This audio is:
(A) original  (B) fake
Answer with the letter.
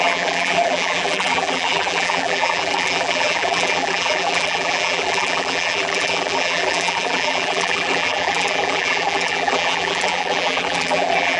B